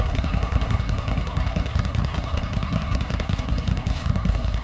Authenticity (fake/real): fake